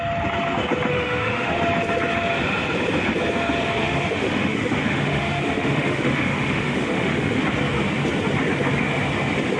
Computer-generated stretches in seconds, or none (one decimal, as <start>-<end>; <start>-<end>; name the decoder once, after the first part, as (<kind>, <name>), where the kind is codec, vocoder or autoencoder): 0.9-1.6 (autoencoder, DAC-VAE); 3.8-7.4